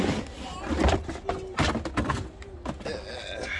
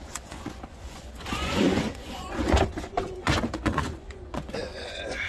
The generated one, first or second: second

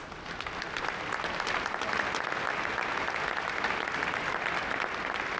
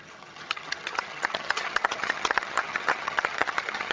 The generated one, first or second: second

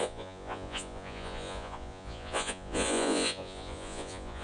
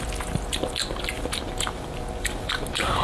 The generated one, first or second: first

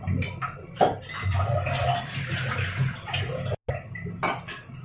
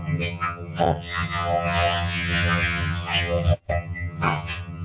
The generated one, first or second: second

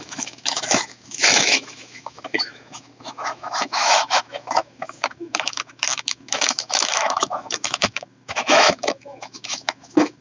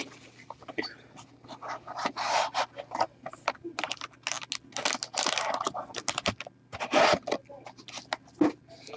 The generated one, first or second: first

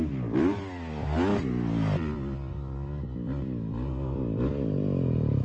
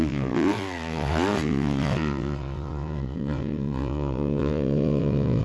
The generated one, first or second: second